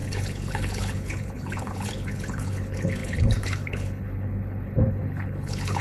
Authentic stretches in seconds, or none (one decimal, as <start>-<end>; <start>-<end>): none